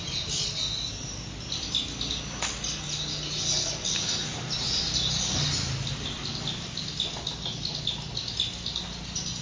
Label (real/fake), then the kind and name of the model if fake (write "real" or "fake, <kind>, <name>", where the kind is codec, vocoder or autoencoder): real